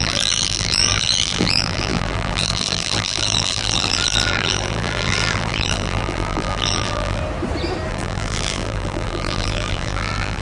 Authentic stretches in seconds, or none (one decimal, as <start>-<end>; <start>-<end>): 7.2-7.9